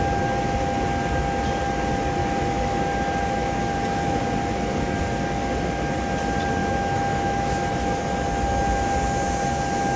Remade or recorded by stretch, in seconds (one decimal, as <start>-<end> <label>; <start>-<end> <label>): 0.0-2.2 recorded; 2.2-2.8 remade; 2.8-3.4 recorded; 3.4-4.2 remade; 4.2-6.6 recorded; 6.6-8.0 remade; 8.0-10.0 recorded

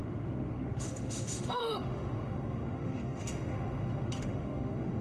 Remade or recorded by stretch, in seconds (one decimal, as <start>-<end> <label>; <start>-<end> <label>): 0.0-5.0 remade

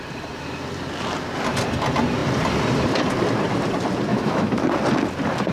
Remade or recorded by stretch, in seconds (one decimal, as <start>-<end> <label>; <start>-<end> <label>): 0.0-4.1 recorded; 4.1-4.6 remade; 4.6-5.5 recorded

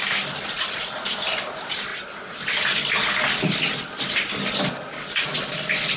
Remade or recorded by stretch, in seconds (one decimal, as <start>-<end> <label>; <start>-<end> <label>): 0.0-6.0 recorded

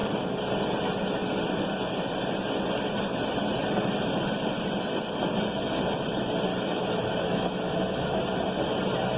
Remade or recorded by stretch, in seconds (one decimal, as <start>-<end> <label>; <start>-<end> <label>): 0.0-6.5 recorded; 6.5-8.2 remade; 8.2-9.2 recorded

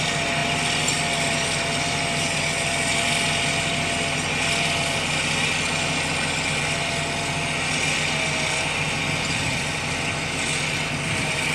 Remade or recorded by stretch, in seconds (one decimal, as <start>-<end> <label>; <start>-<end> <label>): 0.0-11.5 recorded